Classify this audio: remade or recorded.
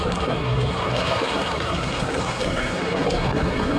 remade